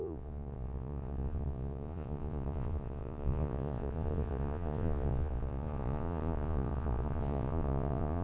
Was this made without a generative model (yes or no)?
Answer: no